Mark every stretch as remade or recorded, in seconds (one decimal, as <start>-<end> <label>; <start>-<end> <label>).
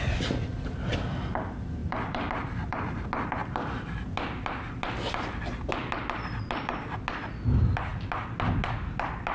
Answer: 0.0-1.8 recorded; 1.8-3.1 remade; 3.1-9.3 recorded